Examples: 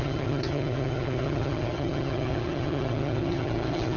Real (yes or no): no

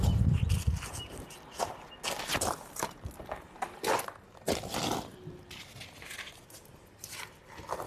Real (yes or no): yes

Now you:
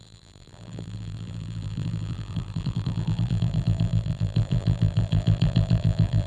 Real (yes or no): no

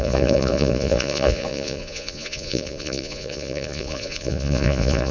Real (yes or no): no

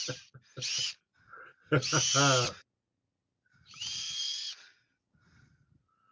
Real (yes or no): yes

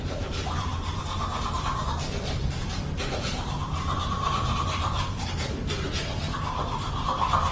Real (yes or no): no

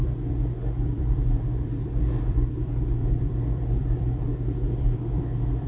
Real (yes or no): no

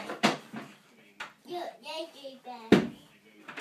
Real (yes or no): yes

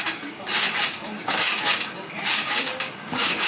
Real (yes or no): no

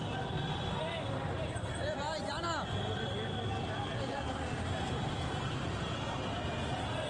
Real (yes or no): no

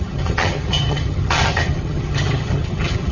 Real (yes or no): no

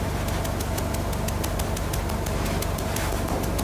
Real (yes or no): yes